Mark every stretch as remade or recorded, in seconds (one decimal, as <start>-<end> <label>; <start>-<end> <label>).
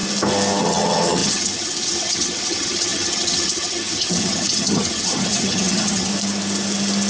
0.0-0.6 recorded; 0.6-6.1 remade; 6.1-7.1 recorded